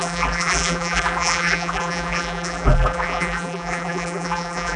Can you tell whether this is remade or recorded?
remade